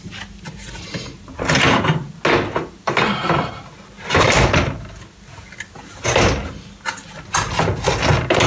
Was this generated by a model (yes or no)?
no